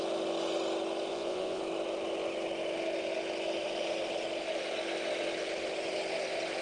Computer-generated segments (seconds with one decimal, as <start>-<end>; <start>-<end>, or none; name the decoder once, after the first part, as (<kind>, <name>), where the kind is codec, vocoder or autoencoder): 1.1-1.6 (vocoder, Vocos)